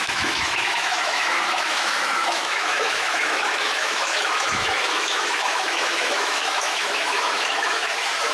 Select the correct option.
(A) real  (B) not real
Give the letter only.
B